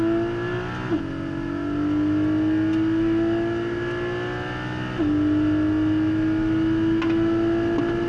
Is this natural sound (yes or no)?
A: yes